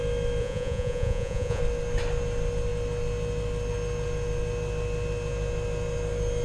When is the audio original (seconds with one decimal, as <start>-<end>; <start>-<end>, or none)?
0.0-0.4; 1.6-6.4